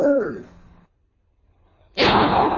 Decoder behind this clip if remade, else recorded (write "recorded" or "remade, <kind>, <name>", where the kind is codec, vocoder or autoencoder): remade, codec, HILCodec